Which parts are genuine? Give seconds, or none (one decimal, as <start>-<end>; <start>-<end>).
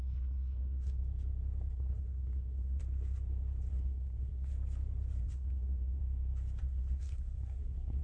1.0-1.7; 2.8-3.7; 4.5-5.2; 6.0-6.6